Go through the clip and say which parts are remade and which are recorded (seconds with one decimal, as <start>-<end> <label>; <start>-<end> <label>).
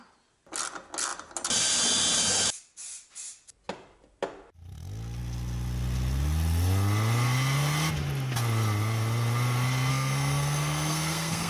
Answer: 0.0-9.9 recorded; 9.9-11.5 remade